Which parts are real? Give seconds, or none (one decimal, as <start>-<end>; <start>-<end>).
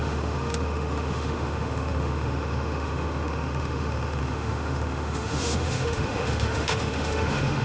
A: none